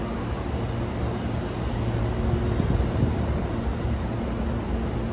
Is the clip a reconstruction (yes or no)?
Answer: no